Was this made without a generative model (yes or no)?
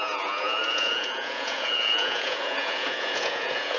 no